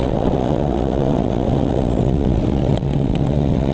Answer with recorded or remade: remade